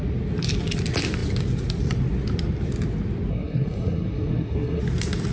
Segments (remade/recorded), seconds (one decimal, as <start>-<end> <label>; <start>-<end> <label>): 0.0-3.3 recorded; 3.3-4.8 remade; 4.8-5.3 recorded